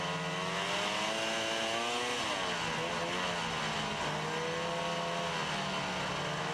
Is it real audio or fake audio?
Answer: real